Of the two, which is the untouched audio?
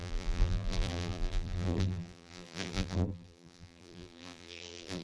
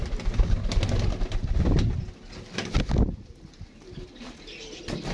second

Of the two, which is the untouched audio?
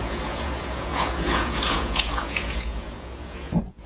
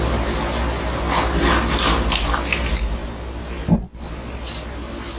second